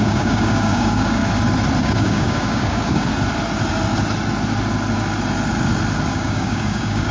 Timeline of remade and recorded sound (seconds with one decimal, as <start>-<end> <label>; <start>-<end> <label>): 0.0-1.2 remade; 1.2-1.8 recorded; 1.8-3.1 remade; 3.1-6.1 recorded; 6.1-7.1 remade

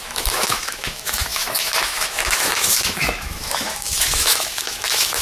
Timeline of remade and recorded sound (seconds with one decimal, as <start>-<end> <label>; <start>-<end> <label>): 0.0-5.2 remade

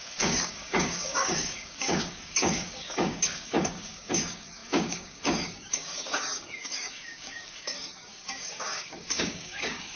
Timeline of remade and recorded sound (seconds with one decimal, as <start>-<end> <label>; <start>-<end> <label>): 0.0-10.0 remade

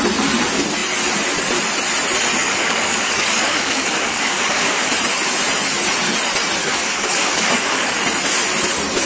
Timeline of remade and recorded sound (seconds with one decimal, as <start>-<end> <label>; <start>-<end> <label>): 0.0-2.4 recorded; 2.4-4.9 remade; 4.9-6.6 recorded; 6.6-7.9 remade; 7.9-9.1 recorded

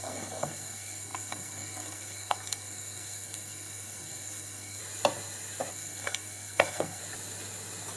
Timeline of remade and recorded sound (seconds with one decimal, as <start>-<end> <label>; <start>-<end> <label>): 0.0-4.8 remade; 4.8-5.7 recorded; 5.7-7.0 remade; 7.0-8.0 recorded

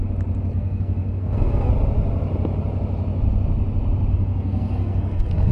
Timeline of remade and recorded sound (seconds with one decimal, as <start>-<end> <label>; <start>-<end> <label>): 0.0-0.5 recorded; 0.5-1.7 remade; 1.7-4.1 recorded; 4.1-5.5 remade

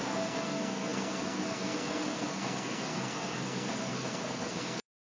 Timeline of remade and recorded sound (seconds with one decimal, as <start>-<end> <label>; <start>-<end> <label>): 0.0-5.0 remade

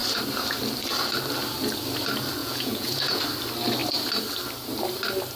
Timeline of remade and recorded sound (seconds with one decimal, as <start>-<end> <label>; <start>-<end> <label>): 0.0-2.4 recorded; 2.4-3.2 remade; 3.2-5.4 recorded